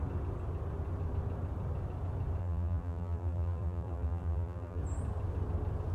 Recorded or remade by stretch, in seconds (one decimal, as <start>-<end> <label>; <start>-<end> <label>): 0.0-2.4 recorded; 2.4-4.8 remade; 4.8-5.9 recorded